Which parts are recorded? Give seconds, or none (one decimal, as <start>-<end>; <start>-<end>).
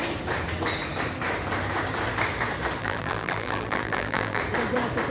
0.0-2.8; 4.4-5.1